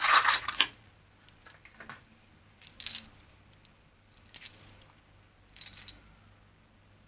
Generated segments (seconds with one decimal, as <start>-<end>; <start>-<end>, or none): 0.0-0.9